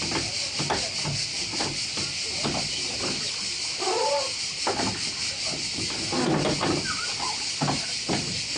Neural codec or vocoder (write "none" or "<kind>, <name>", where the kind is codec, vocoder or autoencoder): none